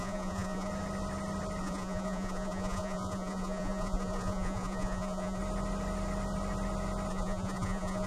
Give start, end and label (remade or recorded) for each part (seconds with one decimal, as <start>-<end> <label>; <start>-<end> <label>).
0.0-0.7 remade; 0.7-1.6 recorded; 1.6-5.4 remade; 5.4-7.1 recorded; 7.1-8.1 remade